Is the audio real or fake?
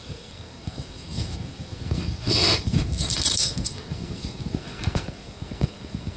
fake